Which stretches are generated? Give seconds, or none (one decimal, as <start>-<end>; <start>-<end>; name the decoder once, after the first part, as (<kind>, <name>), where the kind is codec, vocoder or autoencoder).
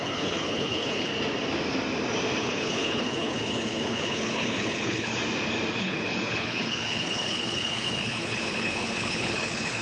0.0-1.1 (codec, HILCodec); 2.4-5.2; 5.8-9.8